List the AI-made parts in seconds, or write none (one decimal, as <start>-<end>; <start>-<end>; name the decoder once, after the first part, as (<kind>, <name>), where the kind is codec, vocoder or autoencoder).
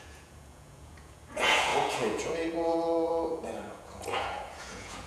0.0-5.1 (vocoder, Vocos)